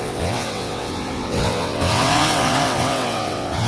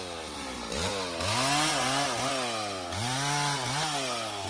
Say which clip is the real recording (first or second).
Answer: second